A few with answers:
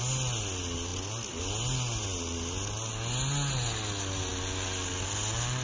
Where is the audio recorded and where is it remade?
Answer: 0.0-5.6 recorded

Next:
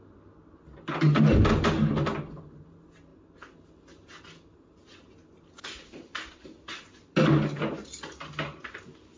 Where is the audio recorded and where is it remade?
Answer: 0.0-9.2 recorded

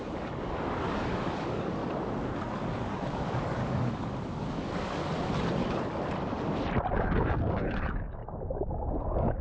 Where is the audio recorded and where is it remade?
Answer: 0.0-1.8 remade; 1.8-2.8 recorded; 2.8-5.0 remade; 5.0-6.9 recorded; 6.9-8.2 remade; 8.2-9.0 recorded; 9.0-9.4 remade

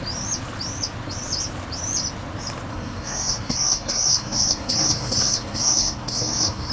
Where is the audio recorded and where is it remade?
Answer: 0.0-2.7 recorded; 2.7-6.7 remade

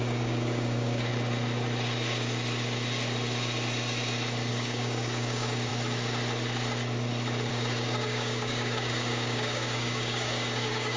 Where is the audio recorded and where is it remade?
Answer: 0.0-1.1 remade; 1.1-4.5 recorded; 4.5-5.7 remade; 5.7-7.5 recorded; 7.5-11.0 remade

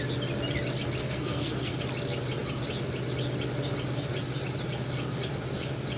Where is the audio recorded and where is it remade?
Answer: 0.0-1.0 recorded; 1.0-1.8 remade; 1.8-6.0 recorded

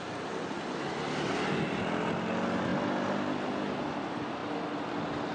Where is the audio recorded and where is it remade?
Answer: 0.0-5.3 recorded

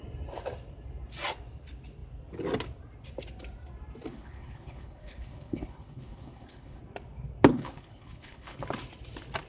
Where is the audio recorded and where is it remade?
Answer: 0.0-4.1 recorded; 4.1-6.8 remade; 6.8-7.5 recorded; 7.5-8.6 remade; 8.6-9.5 recorded